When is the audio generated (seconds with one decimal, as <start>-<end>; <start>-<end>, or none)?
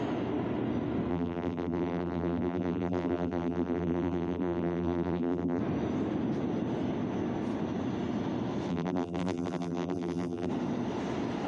1.1-5.6; 8.7-10.5